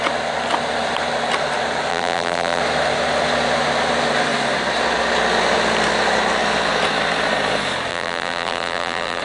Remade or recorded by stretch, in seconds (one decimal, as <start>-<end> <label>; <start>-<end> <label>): 0.0-1.9 recorded; 1.9-2.6 remade; 2.6-7.9 recorded; 7.9-9.2 remade